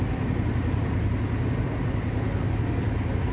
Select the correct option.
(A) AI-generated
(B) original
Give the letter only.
B